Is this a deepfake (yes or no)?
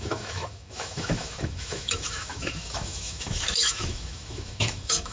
yes